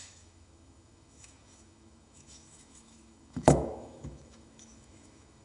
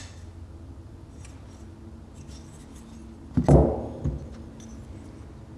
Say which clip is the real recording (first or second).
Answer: second